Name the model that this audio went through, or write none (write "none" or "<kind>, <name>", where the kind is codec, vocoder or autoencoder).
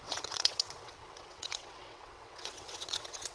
vocoder, WaveNeXt